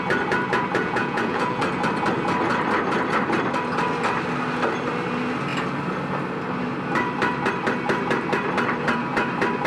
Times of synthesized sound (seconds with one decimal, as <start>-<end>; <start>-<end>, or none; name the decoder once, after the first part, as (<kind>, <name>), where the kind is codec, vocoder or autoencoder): 0.8-1.6 (vocoder, Vocos)